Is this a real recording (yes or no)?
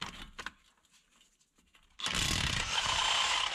yes